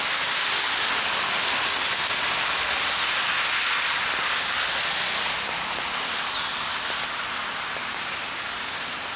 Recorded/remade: recorded